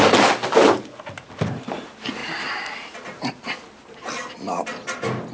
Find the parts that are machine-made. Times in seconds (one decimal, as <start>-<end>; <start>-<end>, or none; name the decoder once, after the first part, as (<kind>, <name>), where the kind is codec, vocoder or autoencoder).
none